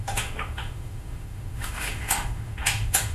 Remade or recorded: remade